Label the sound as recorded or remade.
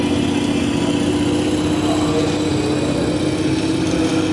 recorded